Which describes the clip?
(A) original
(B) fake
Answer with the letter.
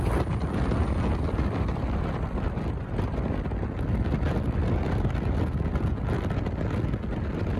A